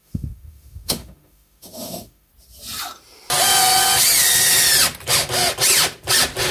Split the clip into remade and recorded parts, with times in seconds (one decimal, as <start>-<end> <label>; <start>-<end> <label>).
0.0-2.3 remade; 2.3-6.5 recorded